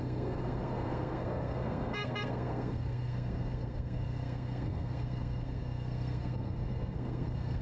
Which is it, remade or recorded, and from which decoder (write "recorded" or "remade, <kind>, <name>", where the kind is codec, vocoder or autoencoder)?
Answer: remade, codec, SNAC